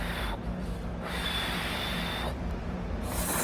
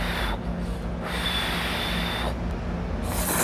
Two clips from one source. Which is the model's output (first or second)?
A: first